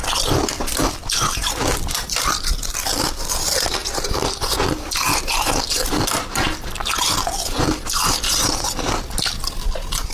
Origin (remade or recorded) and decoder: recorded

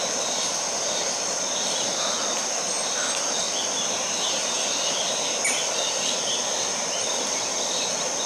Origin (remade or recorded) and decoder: recorded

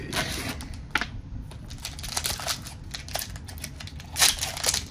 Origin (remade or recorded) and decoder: recorded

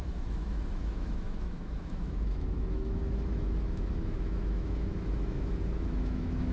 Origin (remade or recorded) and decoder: remade, autoencoder, DAC-VAE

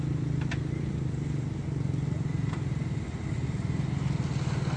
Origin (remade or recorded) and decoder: recorded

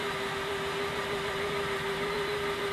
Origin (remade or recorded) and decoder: remade, vocoder, BigVGAN v2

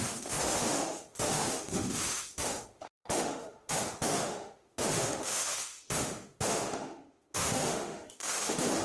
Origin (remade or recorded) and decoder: remade, autoencoder, DAC-VAE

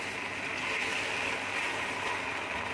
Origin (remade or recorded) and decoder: recorded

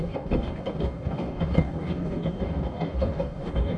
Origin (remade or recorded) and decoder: remade, codec, DAC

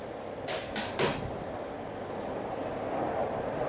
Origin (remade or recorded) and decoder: recorded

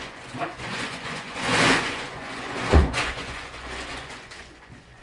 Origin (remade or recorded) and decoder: remade, vocoder, Vocos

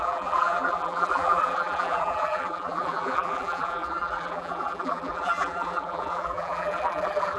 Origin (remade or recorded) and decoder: remade, vocoder, BigVGAN v2